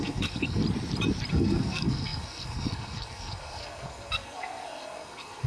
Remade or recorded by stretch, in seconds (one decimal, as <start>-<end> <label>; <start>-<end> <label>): 0.0-0.6 remade; 0.6-1.3 recorded; 1.3-5.5 remade